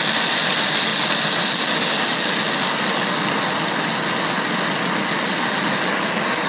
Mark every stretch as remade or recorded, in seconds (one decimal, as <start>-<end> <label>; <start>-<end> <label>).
0.0-6.5 recorded